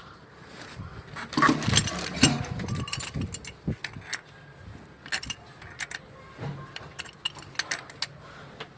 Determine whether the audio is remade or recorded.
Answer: recorded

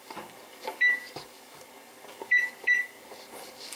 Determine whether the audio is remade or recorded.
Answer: remade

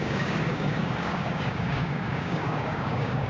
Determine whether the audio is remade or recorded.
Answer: remade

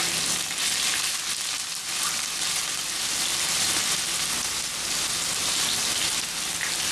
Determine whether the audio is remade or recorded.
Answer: recorded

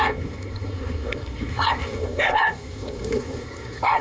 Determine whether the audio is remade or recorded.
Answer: remade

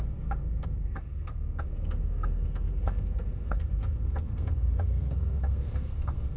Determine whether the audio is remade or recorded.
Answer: remade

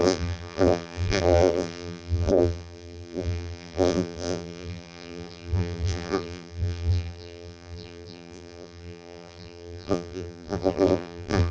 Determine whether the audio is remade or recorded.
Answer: remade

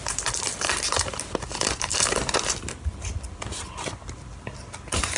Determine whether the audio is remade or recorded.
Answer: remade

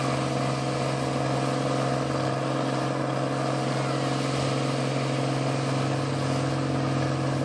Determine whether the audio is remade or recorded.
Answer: recorded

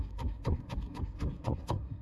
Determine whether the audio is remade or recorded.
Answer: remade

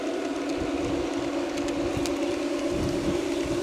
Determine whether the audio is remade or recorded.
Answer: recorded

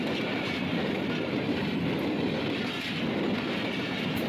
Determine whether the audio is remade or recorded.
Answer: recorded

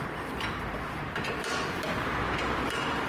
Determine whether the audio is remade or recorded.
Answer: recorded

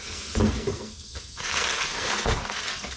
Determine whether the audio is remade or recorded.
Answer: remade